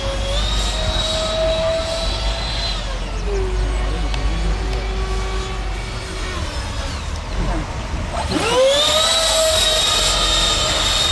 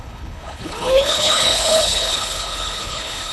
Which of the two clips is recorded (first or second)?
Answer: first